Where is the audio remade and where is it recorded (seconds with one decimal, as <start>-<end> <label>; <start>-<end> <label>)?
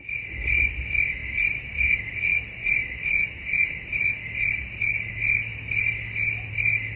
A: 0.0-7.0 recorded